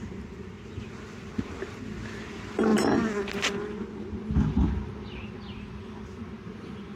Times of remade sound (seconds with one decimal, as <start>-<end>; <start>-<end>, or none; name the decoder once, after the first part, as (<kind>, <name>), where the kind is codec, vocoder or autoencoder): none

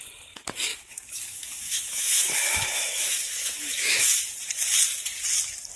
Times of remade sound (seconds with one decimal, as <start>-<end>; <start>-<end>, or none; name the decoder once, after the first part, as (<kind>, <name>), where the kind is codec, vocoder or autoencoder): 0.7-4.2 (autoencoder, DAC-VAE)

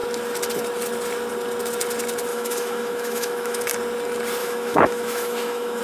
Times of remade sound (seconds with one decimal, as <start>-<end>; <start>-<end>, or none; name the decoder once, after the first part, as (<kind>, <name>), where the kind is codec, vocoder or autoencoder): 2.3-3.6 (autoencoder, DAC-VAE); 4.4-5.8

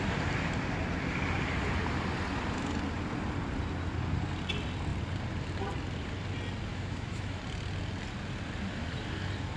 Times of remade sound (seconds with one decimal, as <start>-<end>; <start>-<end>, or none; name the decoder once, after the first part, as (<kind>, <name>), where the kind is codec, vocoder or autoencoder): 6.7-7.4 (autoencoder, DAC-VAE)

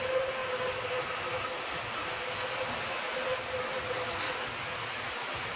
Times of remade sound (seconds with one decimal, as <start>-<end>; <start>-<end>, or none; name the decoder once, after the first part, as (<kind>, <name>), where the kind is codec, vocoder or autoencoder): none